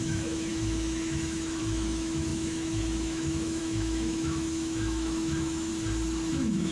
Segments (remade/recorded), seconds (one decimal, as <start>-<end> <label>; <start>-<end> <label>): 0.0-5.7 remade; 5.7-6.3 recorded; 6.3-6.7 remade